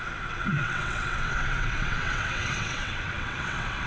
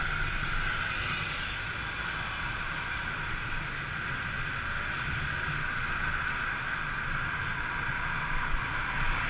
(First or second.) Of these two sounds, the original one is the second